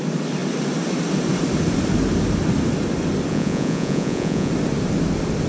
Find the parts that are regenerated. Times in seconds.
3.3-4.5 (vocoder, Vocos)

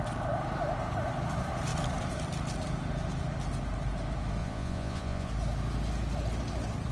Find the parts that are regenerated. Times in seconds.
4.4-5.3 (vocoder, Vocos)

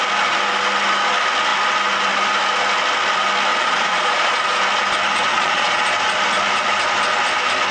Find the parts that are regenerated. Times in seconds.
3.5-4.6 (vocoder, Vocos); 5.3-5.8

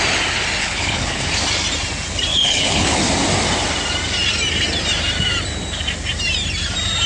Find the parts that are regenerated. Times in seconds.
0.6-1.2 (codec, HILCodec); 2.3-3.0